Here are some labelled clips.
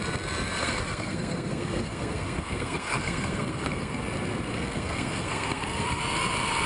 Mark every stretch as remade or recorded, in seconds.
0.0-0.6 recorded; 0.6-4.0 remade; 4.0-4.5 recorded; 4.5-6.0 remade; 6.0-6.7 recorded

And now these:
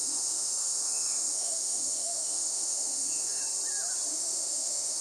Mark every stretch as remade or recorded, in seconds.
0.0-3.4 remade; 3.4-4.1 recorded; 4.1-5.0 remade

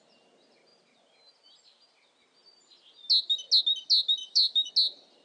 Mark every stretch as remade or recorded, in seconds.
0.0-4.2 recorded; 4.2-4.7 remade; 4.7-5.2 recorded

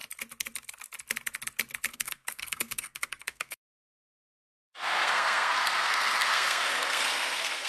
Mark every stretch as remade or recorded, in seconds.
0.0-1.9 recorded; 1.9-7.7 remade

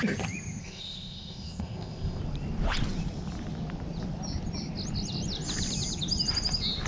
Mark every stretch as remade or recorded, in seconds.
0.0-0.6 recorded; 0.6-2.2 remade; 2.2-6.9 recorded

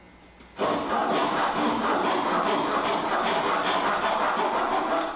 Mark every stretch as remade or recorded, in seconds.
0.0-5.2 recorded

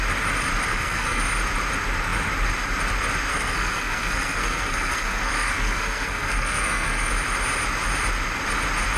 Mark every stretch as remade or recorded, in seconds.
0.0-0.7 recorded; 0.7-1.2 remade; 1.2-3.3 recorded; 3.3-7.1 remade; 7.1-9.0 recorded

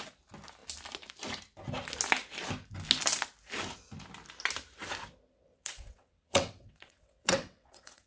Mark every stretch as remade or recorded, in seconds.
0.0-5.5 recorded; 5.5-8.1 remade